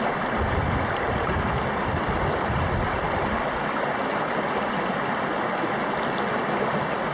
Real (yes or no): yes